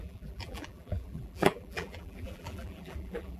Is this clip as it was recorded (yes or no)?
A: no